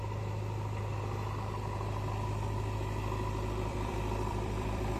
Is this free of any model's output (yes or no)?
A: no